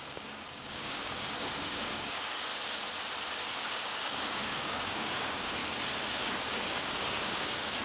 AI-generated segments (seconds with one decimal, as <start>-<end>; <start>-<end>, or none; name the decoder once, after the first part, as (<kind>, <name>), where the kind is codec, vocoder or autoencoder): 0.0-2.5 (codec, DAC); 3.3-5.6; 6.1-7.8